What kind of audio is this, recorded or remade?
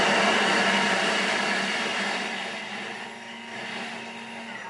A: recorded